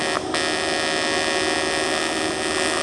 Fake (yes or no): no